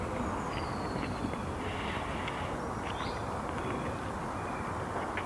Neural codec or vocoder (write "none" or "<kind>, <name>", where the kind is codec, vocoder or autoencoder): none